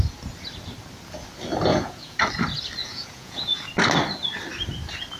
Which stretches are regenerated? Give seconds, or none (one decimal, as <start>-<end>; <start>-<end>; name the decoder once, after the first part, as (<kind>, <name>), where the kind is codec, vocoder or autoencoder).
1.7-2.2 (vocoder, Vocos); 2.8-3.7